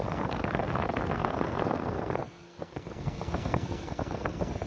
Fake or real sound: fake